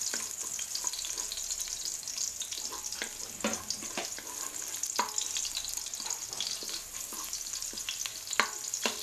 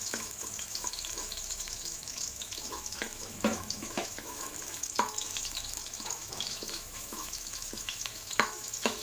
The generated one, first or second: second